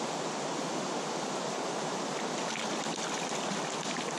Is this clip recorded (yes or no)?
yes